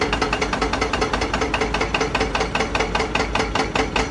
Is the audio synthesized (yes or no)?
no